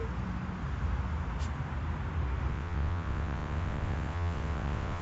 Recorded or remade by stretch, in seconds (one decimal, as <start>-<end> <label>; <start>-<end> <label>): 0.0-2.5 recorded; 2.5-5.0 remade